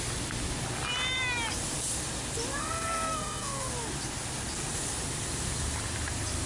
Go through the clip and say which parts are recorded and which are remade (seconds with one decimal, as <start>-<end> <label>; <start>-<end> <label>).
0.0-2.5 recorded; 2.5-3.7 remade; 3.7-6.5 recorded